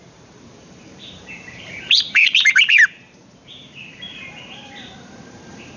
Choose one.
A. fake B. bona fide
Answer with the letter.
A